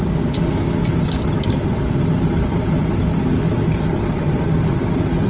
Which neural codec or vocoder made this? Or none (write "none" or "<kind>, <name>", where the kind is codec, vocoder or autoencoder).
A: none